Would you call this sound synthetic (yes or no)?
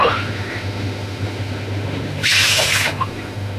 yes